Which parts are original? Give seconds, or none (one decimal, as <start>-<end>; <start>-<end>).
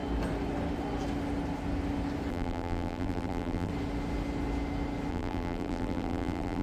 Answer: 0.0-2.3; 3.7-5.1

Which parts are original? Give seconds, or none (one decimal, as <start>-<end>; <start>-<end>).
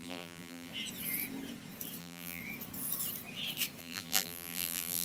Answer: 0.7-2.0; 2.4-3.8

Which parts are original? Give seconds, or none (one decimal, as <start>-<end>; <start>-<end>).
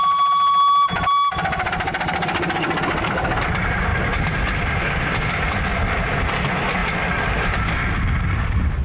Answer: 0.0-6.8; 7.7-8.8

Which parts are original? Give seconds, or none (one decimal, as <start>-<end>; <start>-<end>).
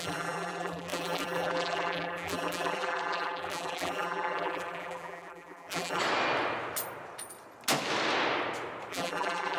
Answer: 6.0-8.9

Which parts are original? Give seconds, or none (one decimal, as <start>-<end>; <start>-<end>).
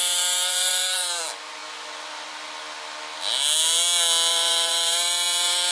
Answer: 1.2-4.3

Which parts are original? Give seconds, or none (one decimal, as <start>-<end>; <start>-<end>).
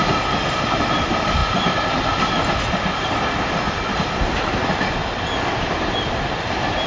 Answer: 1.4-3.9; 5.0-5.8